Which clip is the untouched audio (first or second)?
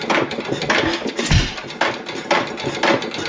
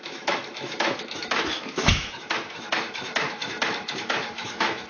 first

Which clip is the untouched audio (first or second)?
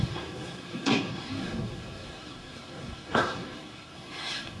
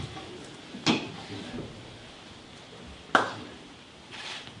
second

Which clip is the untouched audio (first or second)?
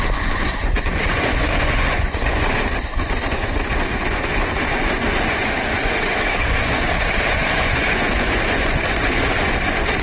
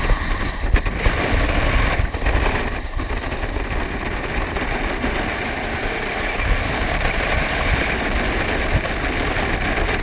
second